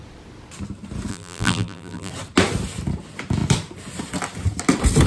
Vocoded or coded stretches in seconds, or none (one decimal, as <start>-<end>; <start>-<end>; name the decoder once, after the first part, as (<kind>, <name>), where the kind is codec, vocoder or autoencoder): 1.1-2.1 (vocoder, BigVGAN v2)